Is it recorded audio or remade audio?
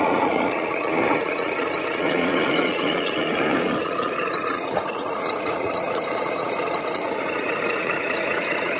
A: remade